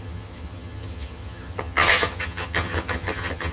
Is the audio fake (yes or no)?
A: yes